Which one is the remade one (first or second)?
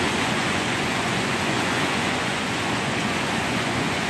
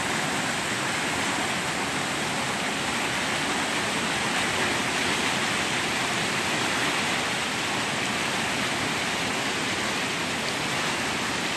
first